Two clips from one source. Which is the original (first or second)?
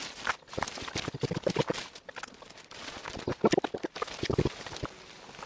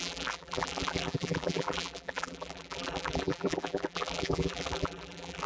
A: first